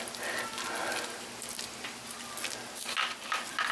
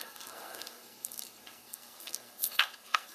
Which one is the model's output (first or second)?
second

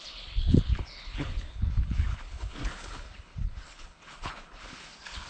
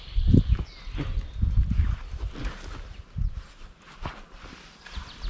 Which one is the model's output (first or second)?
first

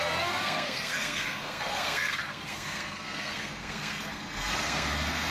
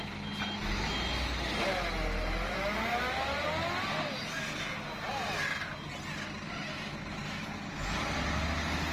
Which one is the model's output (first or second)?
first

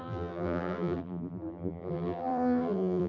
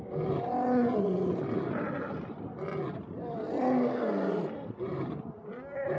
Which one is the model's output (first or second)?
first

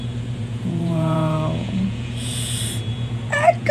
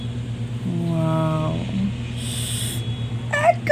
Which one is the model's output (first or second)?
first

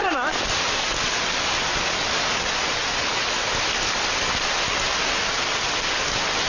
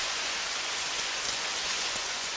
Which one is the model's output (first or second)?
second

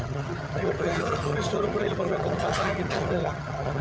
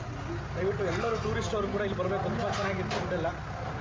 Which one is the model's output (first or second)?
first